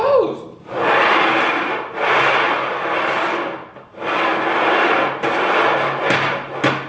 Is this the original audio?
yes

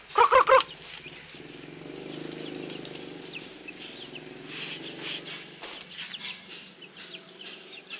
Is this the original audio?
yes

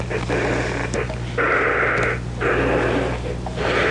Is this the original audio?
yes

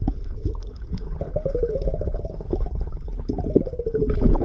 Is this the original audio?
no